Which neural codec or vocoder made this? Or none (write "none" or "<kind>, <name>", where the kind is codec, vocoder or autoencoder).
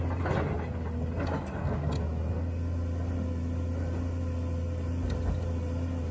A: none